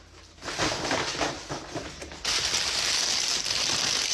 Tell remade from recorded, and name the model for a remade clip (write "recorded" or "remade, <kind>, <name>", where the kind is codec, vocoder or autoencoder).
recorded